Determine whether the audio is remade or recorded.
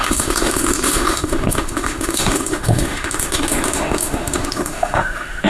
remade